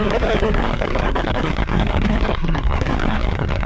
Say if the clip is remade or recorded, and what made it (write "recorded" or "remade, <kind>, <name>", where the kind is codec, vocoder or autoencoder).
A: remade, codec, SNAC